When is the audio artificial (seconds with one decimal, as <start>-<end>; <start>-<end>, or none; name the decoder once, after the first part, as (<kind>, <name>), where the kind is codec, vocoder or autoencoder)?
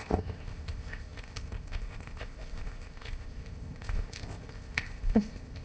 0.0-5.6 (codec, ZipCodec)